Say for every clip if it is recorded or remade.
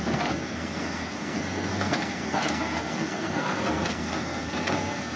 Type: remade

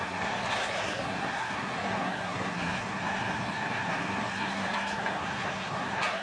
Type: remade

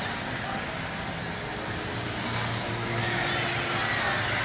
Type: recorded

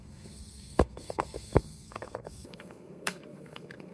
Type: remade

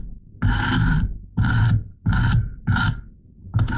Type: recorded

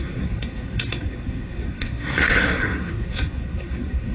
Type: remade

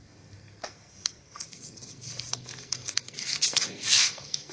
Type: remade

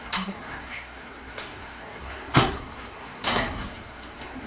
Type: remade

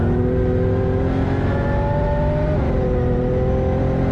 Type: recorded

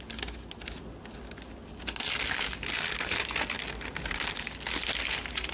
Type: recorded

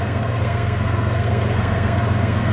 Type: remade